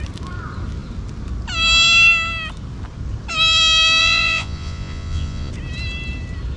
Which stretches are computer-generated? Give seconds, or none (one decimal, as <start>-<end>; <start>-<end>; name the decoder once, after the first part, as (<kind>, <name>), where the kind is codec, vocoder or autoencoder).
4.0-5.5 (vocoder, Vocos)